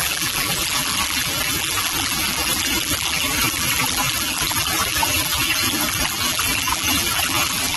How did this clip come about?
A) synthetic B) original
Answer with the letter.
A